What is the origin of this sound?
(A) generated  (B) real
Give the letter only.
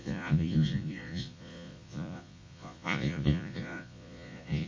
A